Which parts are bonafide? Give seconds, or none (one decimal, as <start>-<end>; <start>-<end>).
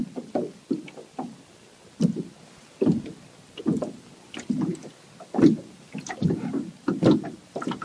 0.0-7.8